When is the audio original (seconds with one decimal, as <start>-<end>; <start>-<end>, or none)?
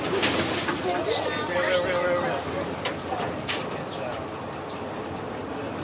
0.0-5.8